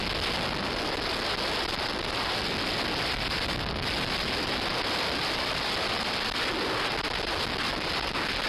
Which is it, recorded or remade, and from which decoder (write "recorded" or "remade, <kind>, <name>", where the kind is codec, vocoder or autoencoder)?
recorded